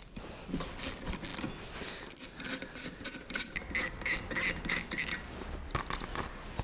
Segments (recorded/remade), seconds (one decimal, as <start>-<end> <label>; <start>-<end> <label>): 0.0-6.6 recorded